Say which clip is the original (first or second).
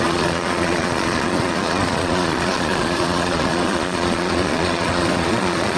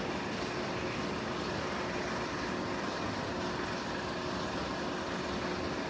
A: second